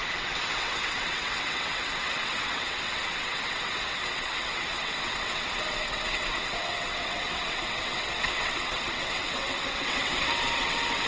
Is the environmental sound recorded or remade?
remade